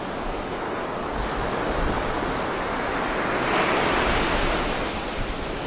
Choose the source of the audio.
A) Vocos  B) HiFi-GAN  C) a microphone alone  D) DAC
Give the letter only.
C